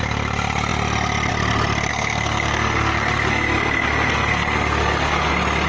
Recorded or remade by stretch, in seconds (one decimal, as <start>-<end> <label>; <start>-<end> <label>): 0.0-1.9 recorded; 1.9-5.3 remade; 5.3-5.7 recorded